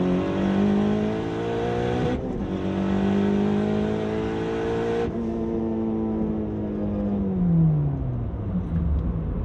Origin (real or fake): real